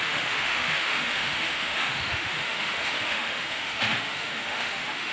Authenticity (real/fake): fake